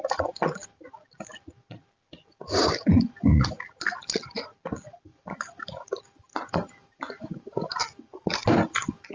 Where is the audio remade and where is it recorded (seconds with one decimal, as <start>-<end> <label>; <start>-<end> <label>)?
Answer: 0.0-9.1 recorded